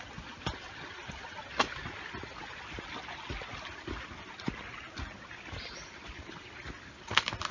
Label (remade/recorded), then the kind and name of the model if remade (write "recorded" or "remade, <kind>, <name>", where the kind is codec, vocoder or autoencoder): recorded